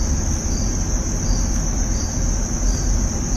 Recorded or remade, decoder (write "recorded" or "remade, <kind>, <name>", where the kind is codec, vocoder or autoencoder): recorded